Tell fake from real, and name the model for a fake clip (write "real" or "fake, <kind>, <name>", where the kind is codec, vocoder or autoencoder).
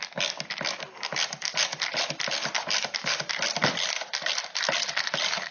real